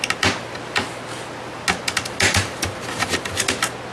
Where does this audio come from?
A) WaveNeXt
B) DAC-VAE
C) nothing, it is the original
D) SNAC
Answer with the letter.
C